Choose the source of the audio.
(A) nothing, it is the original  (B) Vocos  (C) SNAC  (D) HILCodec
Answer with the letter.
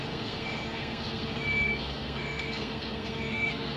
C